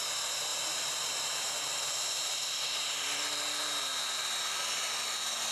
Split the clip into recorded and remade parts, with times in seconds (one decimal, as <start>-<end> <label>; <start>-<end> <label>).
0.0-0.5 recorded; 0.5-3.8 remade; 3.8-5.5 recorded